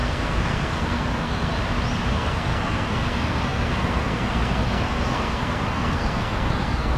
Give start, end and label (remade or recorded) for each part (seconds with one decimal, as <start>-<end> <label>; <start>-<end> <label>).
0.0-1.5 remade; 1.5-2.1 recorded; 2.1-7.0 remade